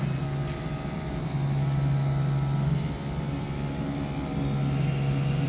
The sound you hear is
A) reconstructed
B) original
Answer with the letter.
B